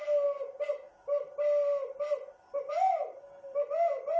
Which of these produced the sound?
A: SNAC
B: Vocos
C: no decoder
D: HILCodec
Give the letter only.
C